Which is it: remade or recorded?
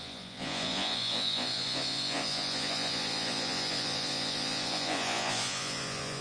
remade